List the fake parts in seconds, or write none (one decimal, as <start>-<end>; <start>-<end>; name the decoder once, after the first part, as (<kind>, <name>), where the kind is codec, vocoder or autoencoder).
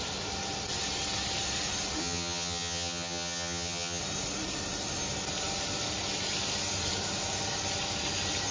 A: 2.0-4.0 (vocoder, HiFi-GAN)